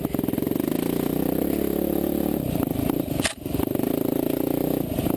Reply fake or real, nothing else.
real